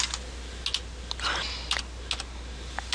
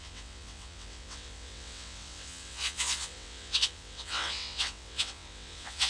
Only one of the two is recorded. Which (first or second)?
first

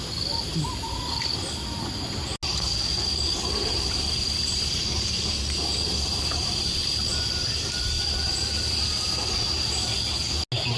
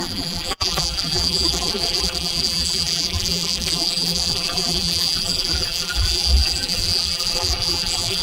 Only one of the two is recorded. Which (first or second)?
first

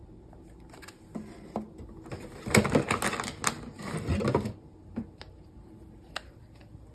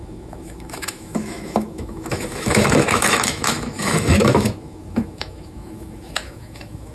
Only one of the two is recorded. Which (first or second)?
first